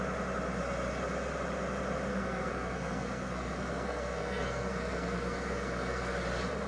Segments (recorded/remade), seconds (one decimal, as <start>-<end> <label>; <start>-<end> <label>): 0.0-2.1 recorded; 2.1-6.1 remade; 6.1-6.7 recorded